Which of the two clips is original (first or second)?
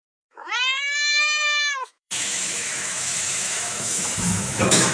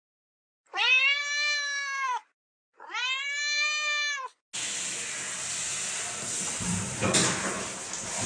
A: second